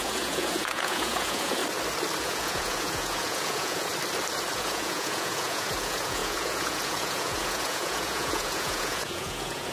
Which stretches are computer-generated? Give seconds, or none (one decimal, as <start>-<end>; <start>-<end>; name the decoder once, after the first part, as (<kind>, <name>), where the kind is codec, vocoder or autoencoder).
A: 0.0-1.6 (vocoder, Vocos); 2.2-3.9; 4.5-9.7